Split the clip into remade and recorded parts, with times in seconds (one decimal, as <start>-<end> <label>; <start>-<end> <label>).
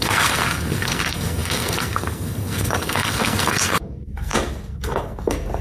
0.0-5.6 remade